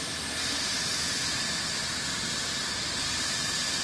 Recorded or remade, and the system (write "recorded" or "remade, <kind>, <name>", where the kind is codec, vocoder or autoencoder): recorded